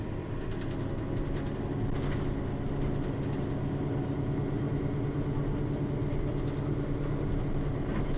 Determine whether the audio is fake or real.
real